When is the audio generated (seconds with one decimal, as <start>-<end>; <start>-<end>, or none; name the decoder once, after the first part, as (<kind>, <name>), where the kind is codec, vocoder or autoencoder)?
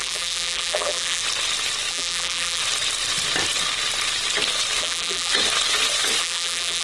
0.0-1.2 (vocoder, BigVGAN v2); 1.9-2.6; 4.8-5.3; 6.2-6.8